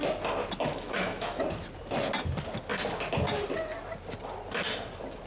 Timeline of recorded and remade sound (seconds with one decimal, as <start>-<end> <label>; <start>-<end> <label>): 0.0-0.7 recorded; 0.7-1.4 remade; 1.4-5.3 recorded